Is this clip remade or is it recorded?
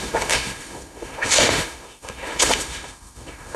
remade